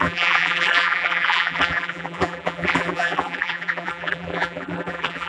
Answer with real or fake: fake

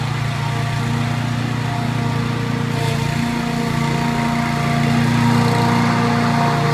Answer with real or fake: real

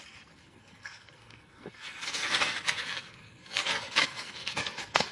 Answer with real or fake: fake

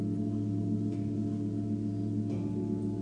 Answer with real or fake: real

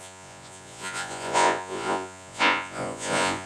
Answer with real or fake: fake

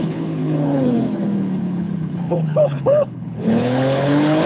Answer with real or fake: fake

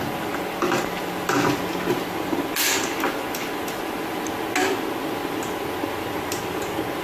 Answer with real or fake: real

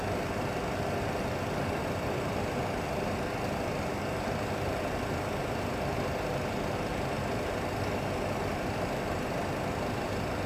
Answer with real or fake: real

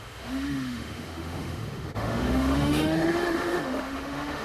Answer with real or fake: fake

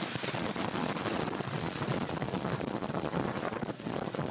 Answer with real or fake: fake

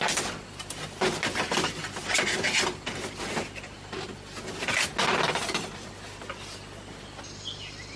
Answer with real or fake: real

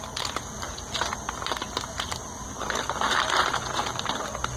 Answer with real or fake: real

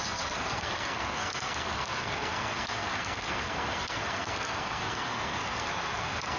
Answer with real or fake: fake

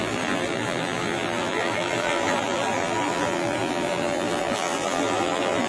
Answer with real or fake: fake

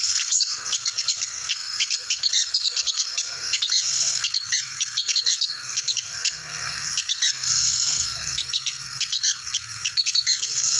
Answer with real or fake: fake